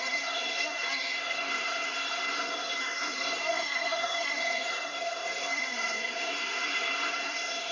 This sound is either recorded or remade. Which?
remade